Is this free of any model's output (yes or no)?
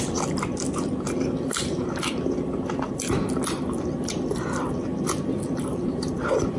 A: no